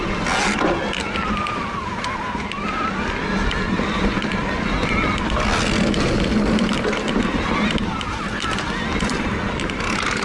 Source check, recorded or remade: recorded